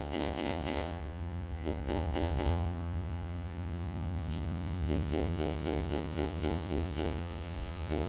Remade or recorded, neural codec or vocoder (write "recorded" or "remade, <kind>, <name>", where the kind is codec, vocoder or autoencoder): remade, vocoder, Vocos